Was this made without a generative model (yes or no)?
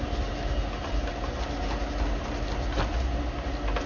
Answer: yes